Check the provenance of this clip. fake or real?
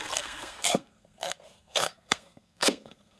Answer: fake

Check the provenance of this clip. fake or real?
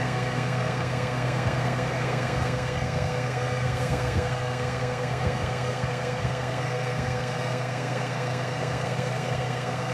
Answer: fake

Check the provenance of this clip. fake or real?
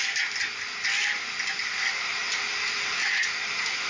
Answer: real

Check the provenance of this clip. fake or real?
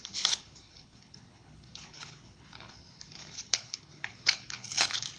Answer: fake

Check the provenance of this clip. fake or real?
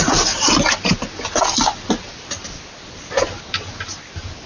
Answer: real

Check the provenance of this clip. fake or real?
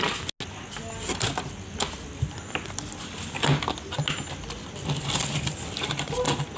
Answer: real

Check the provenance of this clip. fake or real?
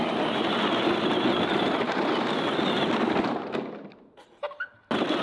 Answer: real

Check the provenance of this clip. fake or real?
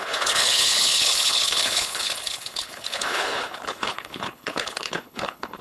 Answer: fake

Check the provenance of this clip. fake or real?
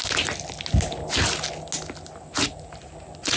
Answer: real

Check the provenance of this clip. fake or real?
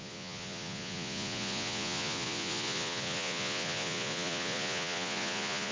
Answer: fake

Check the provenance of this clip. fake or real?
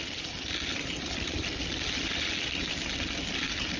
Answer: real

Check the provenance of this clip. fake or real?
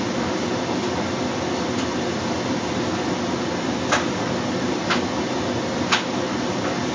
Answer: real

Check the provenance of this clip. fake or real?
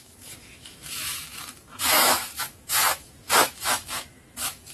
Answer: fake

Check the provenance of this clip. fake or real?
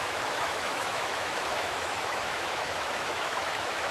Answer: fake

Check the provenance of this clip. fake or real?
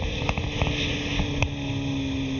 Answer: real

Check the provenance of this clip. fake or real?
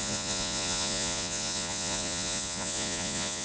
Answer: fake